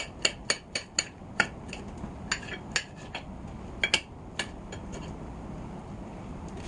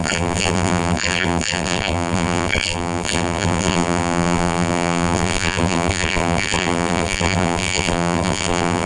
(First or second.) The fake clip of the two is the second